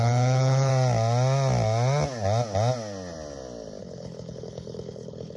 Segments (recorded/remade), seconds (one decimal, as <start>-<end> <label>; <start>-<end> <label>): 0.0-0.7 remade; 0.7-3.8 recorded; 3.8-5.4 remade